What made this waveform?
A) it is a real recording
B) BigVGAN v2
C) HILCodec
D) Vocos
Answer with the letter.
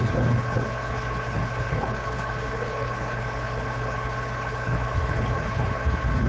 C